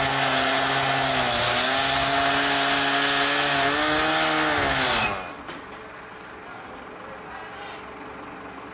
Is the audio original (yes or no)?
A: yes